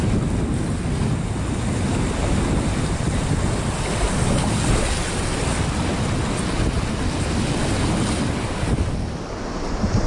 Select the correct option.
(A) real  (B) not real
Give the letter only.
A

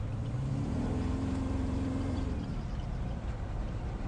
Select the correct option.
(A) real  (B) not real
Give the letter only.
B